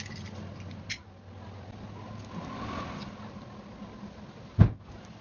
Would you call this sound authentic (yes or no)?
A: yes